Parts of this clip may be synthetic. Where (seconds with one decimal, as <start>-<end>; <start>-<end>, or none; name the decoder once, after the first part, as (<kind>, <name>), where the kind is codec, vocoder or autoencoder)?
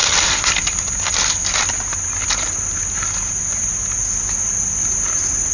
none